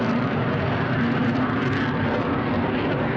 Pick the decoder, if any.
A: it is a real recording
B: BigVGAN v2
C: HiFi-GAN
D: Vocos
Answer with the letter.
A